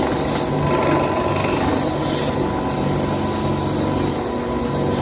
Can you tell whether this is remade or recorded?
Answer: recorded